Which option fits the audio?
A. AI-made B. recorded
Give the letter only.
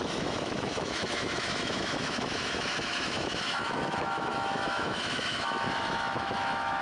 A